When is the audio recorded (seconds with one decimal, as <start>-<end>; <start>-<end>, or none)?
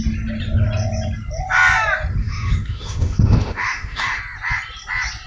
0.0-2.2; 4.2-5.3